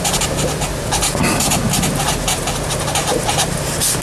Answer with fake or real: real